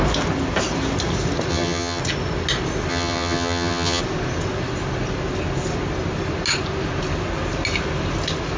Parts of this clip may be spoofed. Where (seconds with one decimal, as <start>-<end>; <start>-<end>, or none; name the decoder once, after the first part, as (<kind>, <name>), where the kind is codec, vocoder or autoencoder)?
1.5-2.0 (vocoder, HiFi-GAN); 2.9-4.0